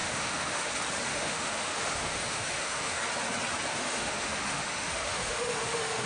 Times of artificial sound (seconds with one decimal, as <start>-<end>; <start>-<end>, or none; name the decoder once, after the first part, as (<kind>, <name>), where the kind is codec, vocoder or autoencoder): 0.0-0.7 (autoencoder, DAC-VAE); 1.1-3.0; 3.7-6.1